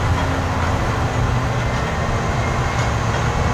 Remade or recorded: recorded